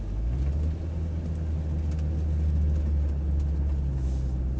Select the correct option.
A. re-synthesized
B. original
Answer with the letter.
B